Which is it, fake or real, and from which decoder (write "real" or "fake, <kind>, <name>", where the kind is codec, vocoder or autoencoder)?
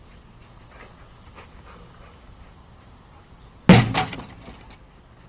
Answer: real